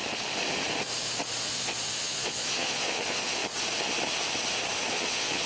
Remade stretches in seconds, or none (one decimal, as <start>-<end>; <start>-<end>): 1.4-3.4; 4.9-5.5